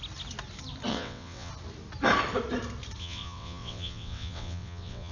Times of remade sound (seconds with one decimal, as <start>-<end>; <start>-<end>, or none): 0.9-1.5; 3.0-5.1